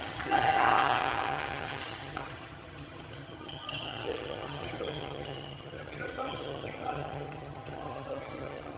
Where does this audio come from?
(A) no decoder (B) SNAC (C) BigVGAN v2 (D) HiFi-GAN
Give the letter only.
D